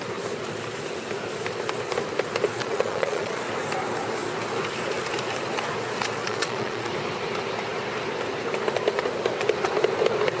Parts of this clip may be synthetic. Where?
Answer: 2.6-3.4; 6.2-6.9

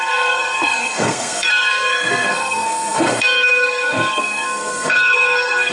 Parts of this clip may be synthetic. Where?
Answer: 0.0-5.7

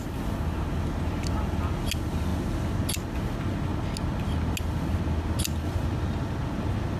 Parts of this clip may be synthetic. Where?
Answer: none

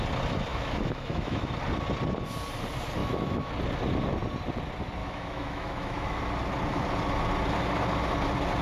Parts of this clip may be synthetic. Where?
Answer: 0.5-1.5; 3.0-3.5; 5.0-6.2

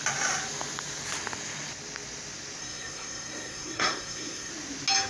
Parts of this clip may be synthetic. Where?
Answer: 2.6-4.5

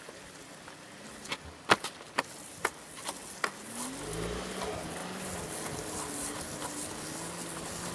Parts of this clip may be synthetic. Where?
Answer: none